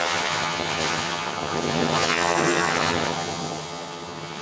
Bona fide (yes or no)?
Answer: no